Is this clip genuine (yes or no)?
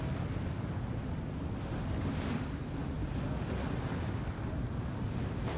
yes